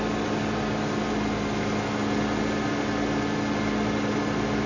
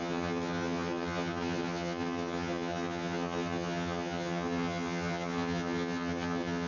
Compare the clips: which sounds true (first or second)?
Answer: first